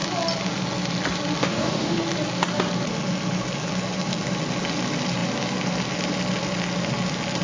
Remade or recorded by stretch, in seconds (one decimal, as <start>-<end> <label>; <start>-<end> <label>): 0.0-1.4 recorded; 1.4-2.0 remade; 2.0-7.4 recorded